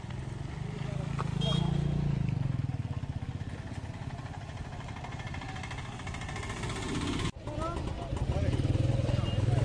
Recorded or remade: recorded